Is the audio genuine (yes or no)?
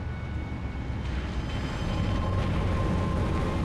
yes